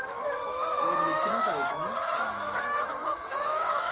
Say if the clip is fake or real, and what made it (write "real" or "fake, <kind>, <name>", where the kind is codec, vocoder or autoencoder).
fake, autoencoder, DAC-VAE